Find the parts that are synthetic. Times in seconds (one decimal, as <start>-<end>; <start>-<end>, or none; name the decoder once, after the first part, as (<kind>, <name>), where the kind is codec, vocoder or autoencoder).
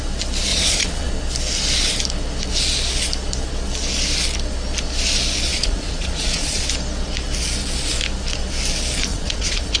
0.5-1.1 (vocoder, Vocos); 5.5-6.6; 9.1-9.8